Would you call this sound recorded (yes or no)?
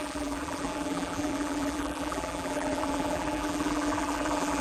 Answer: no